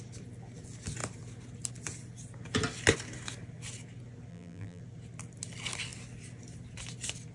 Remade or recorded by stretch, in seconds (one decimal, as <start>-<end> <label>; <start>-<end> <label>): 0.0-4.3 recorded; 4.3-4.8 remade; 4.8-7.3 recorded